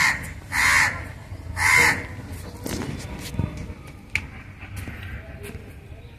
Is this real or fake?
real